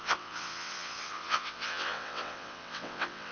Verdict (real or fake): fake